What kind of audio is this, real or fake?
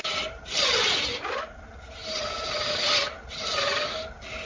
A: real